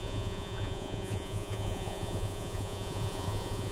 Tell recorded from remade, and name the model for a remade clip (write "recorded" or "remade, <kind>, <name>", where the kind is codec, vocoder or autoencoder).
remade, vocoder, Vocos